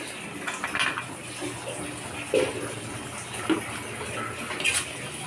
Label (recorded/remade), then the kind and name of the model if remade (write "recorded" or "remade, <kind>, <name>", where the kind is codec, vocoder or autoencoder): recorded